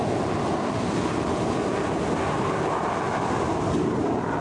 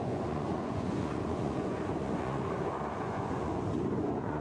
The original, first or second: first